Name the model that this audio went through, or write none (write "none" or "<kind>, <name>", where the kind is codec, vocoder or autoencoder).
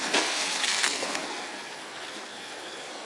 codec, SNAC